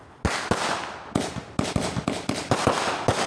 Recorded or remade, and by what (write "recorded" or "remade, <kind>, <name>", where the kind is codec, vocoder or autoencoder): recorded